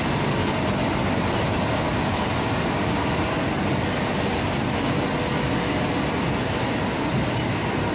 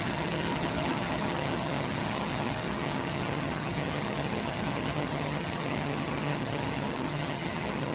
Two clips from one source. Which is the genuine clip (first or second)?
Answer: first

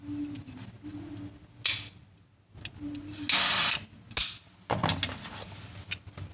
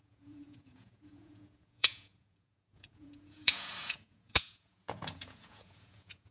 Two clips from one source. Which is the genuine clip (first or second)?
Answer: first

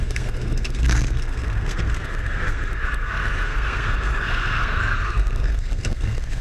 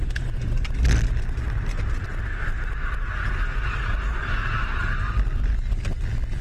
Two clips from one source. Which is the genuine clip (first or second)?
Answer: second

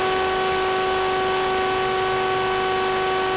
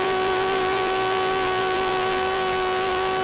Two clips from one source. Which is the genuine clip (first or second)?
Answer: first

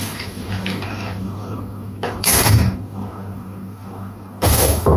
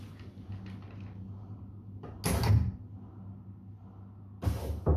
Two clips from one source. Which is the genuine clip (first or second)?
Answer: second